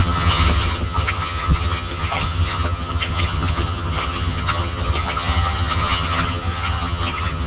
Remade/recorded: remade